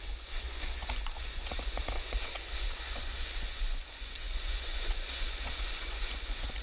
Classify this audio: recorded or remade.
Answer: remade